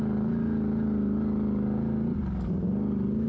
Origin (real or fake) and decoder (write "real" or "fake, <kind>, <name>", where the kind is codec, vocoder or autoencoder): real